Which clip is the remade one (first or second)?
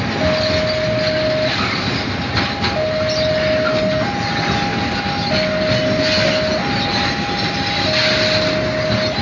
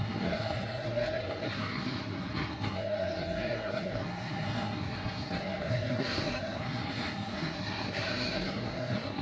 second